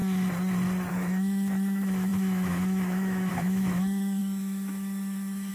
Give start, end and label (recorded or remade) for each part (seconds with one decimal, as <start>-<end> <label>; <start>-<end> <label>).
0.0-0.9 recorded; 0.9-5.5 remade